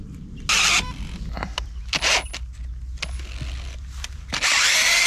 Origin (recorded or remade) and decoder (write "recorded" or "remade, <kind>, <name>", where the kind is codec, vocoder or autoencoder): recorded